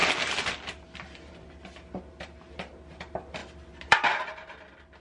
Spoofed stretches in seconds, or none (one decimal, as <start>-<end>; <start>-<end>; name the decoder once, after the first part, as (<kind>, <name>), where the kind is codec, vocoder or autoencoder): 3.4-4.3 (vocoder, BigVGAN v2)